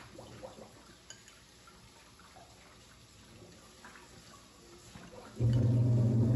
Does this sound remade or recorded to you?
recorded